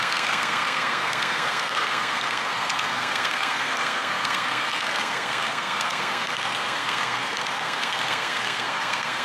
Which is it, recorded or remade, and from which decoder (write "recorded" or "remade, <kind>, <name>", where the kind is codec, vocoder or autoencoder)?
remade, codec, SNAC